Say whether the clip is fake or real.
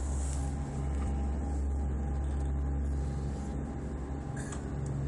real